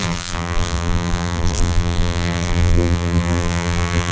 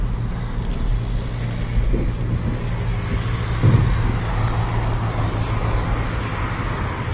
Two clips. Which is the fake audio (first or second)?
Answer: first